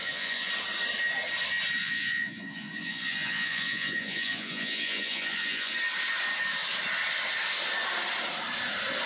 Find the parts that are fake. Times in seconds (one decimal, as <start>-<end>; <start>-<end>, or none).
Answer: 0.0-0.5; 1.8-5.7